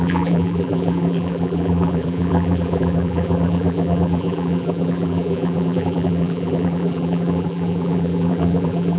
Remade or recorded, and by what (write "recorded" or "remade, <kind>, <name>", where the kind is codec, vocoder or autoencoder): remade, vocoder, BigVGAN v2